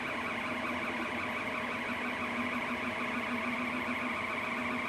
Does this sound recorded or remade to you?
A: recorded